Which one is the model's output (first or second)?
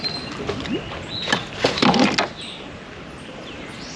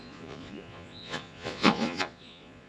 second